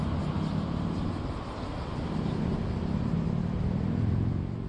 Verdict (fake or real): real